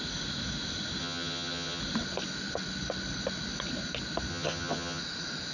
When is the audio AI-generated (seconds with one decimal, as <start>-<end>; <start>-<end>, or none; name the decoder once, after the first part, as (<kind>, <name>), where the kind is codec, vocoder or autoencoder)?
1.0-1.8 (vocoder, HiFi-GAN); 4.3-5.0